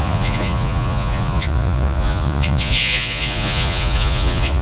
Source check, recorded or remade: remade